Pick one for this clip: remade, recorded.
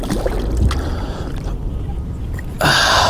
recorded